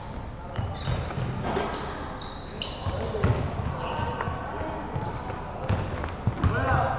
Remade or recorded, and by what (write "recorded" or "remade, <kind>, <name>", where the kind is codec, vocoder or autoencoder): recorded